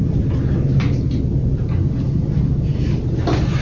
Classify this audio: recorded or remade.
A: recorded